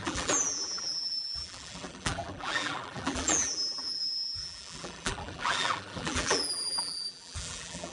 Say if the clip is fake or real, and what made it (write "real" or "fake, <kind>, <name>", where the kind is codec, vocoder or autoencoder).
fake, vocoder, BigVGAN v2